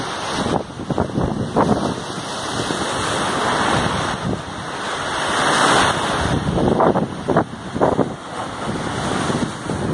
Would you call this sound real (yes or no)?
yes